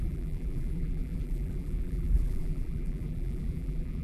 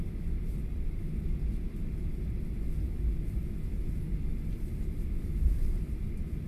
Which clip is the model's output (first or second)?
first